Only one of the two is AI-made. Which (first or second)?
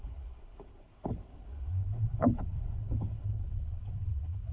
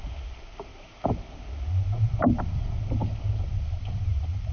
first